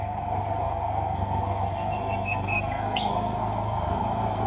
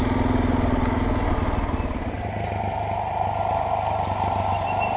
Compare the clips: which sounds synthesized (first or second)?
first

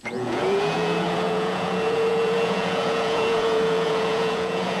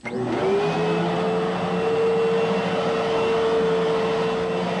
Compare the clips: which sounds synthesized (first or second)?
first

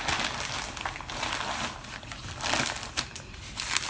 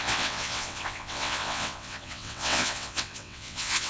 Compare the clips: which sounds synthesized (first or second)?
second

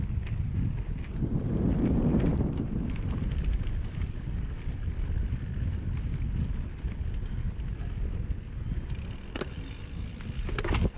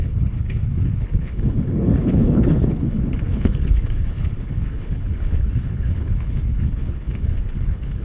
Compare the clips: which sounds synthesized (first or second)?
second